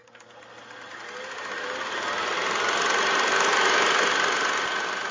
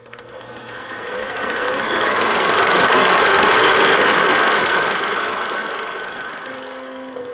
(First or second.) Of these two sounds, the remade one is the second